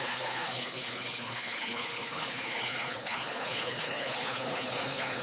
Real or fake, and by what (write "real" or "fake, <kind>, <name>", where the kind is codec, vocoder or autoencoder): fake, codec, HILCodec